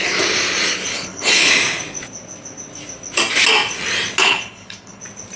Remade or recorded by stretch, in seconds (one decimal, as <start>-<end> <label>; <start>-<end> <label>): 0.0-0.9 recorded; 0.9-1.5 remade; 1.5-4.2 recorded; 4.2-5.0 remade; 5.0-5.4 recorded